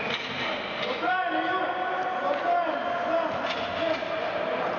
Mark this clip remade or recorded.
recorded